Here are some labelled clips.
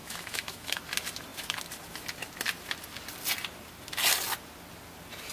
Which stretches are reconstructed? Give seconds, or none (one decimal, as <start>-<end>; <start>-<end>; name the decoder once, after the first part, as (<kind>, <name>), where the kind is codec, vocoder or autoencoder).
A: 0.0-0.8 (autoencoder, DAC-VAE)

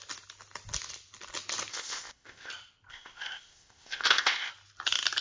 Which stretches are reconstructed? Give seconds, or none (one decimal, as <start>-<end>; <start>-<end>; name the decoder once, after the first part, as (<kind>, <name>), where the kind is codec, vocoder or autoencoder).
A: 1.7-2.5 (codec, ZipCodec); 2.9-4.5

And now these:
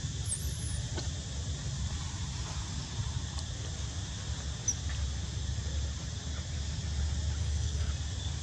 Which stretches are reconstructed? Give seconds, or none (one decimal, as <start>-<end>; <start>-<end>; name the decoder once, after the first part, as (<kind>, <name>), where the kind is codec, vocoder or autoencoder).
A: 7.4-7.9 (codec, SNAC)

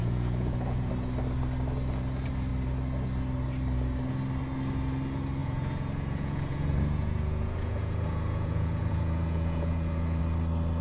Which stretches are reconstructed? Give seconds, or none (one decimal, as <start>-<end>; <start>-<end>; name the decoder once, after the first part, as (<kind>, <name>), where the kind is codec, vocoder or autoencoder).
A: 0.0-0.9 (vocoder, Vocos); 5.4-10.2

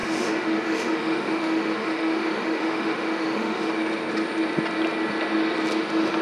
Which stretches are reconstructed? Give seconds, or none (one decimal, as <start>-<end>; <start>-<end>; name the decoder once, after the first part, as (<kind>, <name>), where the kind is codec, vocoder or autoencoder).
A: 0.0-3.7 (autoencoder, DAC-VAE)